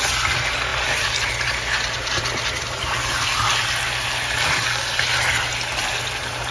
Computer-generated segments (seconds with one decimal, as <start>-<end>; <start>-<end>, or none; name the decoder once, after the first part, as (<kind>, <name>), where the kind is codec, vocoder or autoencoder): none